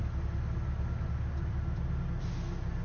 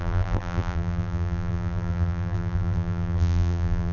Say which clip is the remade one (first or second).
second